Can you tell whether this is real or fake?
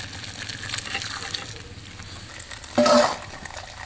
real